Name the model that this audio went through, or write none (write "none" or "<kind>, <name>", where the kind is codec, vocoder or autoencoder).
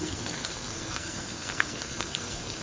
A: codec, SNAC